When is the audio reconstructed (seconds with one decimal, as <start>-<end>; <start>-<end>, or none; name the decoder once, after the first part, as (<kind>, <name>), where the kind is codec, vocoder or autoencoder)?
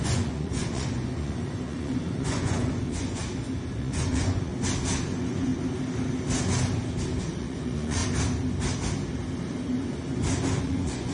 0.0-3.2 (vocoder, Vocos); 3.8-4.5; 5.1-5.5; 7.2-8.0; 10.6-11.1